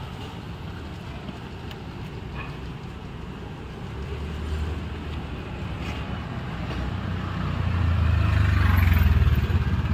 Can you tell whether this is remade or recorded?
recorded